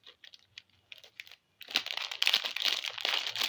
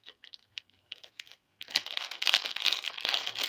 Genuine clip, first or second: first